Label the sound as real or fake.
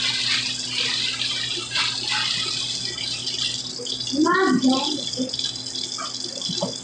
real